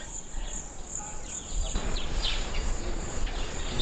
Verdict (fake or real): fake